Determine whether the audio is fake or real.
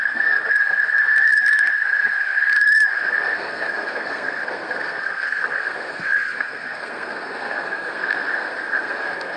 fake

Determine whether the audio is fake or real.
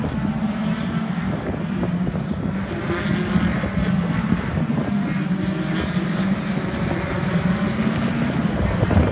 real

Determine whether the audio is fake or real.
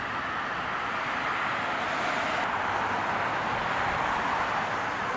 real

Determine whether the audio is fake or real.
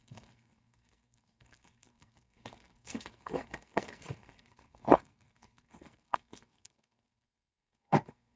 fake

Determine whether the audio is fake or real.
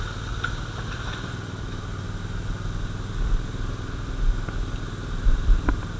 real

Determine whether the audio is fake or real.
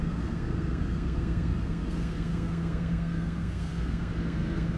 fake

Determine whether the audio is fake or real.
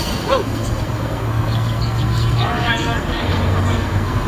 fake